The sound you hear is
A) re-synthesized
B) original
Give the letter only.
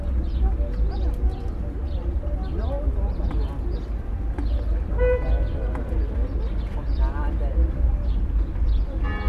B